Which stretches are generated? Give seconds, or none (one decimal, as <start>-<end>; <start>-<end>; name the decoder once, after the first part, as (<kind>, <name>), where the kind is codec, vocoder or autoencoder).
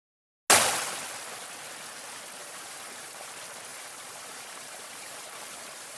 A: 2.4-3.3 (vocoder, BigVGAN v2); 3.7-6.0